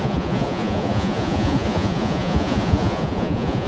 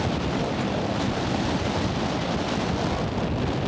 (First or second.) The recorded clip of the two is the second